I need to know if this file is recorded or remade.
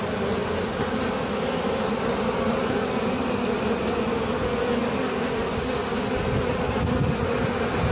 recorded